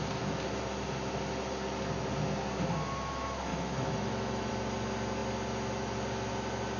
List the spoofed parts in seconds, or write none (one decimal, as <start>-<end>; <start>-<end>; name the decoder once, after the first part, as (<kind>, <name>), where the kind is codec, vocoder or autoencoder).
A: 3.5-4.5 (autoencoder, DAC-VAE)